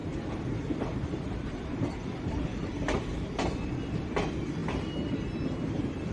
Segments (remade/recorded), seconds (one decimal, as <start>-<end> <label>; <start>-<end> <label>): 0.0-3.7 remade; 3.7-6.1 recorded